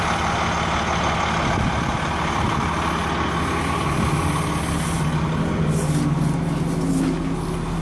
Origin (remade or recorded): recorded